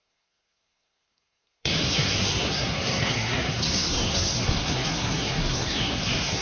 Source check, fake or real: fake